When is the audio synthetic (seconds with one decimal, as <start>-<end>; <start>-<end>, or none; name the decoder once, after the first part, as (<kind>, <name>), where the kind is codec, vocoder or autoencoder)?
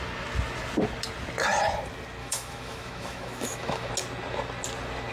2.2-3.9 (autoencoder, DAC-VAE)